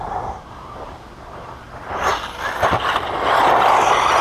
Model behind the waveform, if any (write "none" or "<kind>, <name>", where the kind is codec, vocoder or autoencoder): none